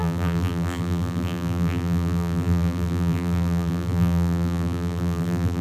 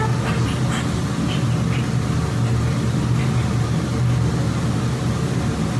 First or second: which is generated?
first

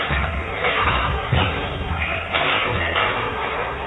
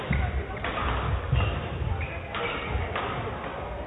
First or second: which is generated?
first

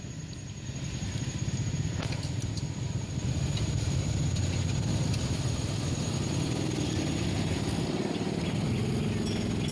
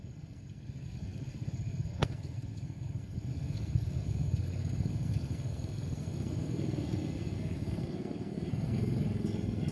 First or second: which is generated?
second